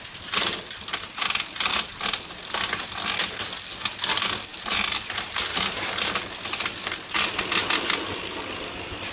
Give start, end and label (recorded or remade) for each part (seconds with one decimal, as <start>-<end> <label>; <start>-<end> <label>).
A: 0.0-4.5 recorded; 4.5-5.9 remade; 5.9-9.1 recorded